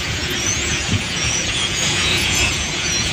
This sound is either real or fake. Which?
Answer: fake